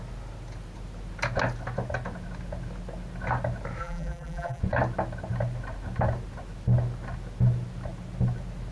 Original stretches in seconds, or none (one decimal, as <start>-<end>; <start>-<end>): 0.0-3.8; 4.6-8.7